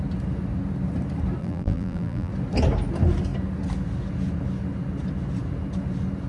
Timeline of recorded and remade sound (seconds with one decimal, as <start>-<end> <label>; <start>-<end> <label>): 0.0-1.4 recorded; 1.4-2.3 remade; 2.3-6.3 recorded